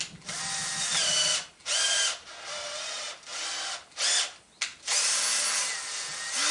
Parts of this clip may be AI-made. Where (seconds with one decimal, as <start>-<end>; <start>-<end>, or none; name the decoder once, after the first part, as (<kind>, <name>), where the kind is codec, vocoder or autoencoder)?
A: none